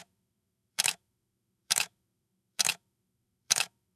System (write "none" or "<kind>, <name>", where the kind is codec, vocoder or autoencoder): autoencoder, DAC-VAE